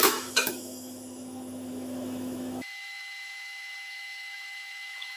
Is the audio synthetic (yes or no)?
yes